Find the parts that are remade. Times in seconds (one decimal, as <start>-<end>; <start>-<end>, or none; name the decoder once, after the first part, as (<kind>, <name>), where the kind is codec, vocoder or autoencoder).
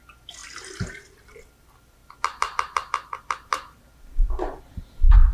none